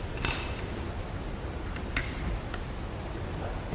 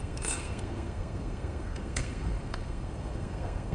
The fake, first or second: second